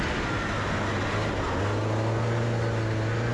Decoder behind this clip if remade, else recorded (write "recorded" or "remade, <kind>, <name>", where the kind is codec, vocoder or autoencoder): recorded